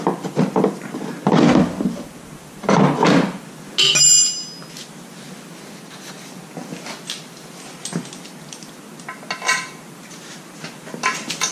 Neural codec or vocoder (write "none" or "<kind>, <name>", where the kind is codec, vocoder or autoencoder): none